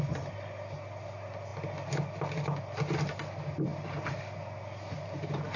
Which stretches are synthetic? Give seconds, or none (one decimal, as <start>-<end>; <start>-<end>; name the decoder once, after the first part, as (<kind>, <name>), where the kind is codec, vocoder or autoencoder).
none